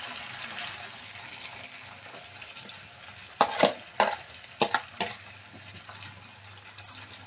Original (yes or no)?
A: yes